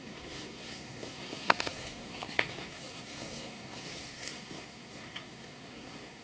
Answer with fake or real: fake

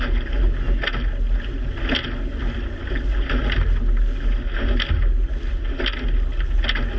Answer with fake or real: real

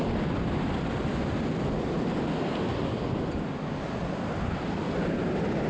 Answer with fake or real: real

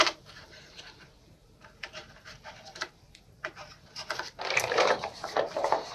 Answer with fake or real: fake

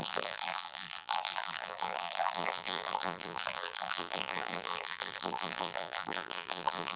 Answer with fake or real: fake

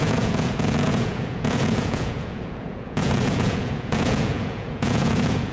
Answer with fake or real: fake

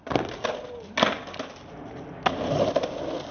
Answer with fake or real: real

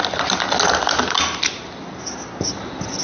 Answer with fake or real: real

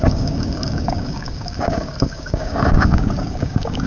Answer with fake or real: fake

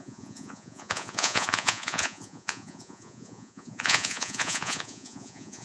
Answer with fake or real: fake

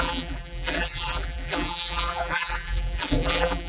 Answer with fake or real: fake